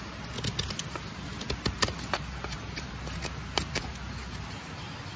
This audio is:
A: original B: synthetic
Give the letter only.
A